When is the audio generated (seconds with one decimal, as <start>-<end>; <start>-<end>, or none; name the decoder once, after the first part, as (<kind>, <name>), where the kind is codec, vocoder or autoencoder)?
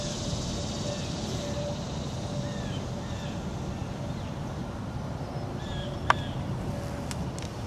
none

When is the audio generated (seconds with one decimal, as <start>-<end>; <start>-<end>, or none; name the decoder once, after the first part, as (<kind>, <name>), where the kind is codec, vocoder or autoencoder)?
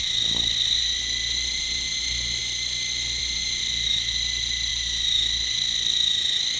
none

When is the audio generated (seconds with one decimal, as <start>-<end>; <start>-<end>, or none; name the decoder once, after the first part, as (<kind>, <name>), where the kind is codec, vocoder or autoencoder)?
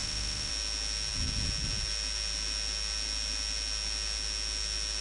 0.0-0.5 (autoencoder, DAC-VAE)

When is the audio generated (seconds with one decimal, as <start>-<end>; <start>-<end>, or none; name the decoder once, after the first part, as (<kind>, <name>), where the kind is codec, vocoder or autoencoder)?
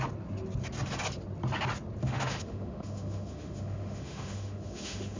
2.0-5.2 (autoencoder, DAC-VAE)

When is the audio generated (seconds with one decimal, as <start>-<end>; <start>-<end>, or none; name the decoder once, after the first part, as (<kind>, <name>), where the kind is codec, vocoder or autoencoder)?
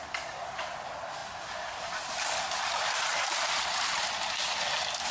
none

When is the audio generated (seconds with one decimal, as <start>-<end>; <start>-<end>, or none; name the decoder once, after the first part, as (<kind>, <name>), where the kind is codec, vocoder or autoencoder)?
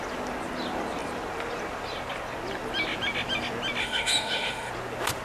3.8-4.7 (autoencoder, DAC-VAE)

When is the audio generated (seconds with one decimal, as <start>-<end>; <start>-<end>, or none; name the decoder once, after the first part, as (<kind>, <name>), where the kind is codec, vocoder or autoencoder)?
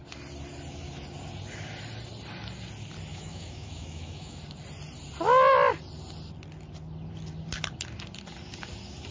3.1-4.4 (autoencoder, DAC-VAE)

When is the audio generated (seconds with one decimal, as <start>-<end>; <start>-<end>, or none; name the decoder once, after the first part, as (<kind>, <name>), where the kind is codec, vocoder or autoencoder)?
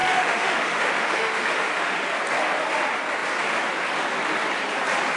0.0-2.0 (autoencoder, DAC-VAE)